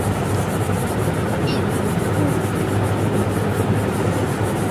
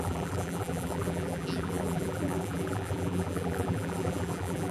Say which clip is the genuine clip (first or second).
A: first